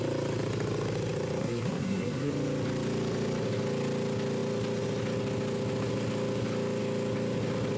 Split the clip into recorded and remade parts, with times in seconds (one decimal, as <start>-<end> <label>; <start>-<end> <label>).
0.0-1.4 recorded; 1.4-2.3 remade; 2.3-7.8 recorded